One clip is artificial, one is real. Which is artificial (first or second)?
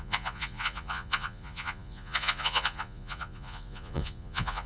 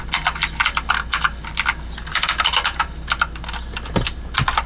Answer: first